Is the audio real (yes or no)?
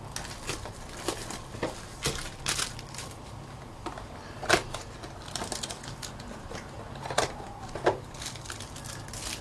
yes